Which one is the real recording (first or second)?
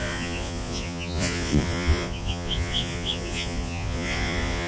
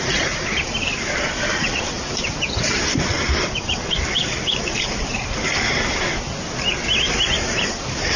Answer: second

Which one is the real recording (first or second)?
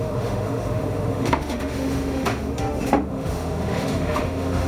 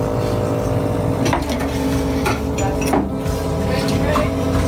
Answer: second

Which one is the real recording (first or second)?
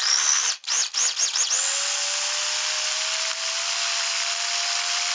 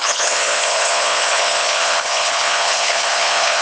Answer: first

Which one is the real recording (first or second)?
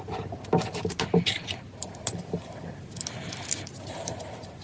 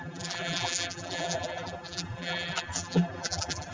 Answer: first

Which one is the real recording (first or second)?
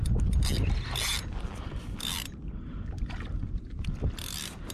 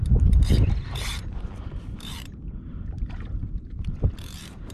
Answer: first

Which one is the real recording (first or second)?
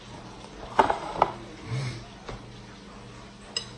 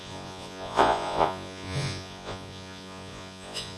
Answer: first